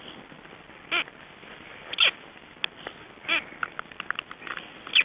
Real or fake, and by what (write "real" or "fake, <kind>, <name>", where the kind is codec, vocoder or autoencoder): real